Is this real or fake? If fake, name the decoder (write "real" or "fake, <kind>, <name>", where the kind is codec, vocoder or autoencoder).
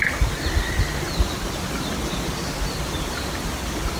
real